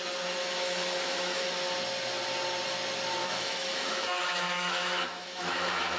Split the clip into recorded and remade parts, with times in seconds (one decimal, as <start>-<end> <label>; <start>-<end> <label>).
0.0-0.4 recorded; 0.4-1.5 remade; 1.5-3.2 recorded; 3.2-6.0 remade